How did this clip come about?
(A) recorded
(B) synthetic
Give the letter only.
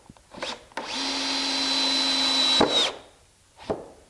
A